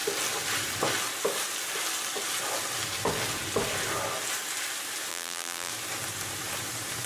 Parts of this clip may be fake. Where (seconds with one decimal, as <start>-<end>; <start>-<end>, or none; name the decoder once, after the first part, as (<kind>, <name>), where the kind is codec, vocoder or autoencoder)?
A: 5.1-5.7 (vocoder, BigVGAN v2)

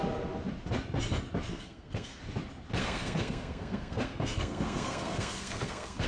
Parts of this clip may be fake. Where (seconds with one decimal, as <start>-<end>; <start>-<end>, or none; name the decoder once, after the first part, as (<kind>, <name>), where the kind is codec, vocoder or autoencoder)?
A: 1.5-2.2 (codec, SNAC); 2.8-6.1

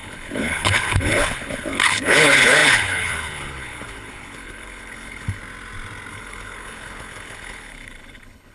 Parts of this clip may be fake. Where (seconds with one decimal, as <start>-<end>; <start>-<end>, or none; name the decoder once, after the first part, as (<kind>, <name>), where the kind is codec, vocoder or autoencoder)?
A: 0.0-5.4 (codec, HILCodec); 6.1-8.5